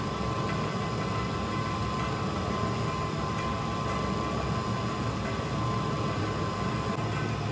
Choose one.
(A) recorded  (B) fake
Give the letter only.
A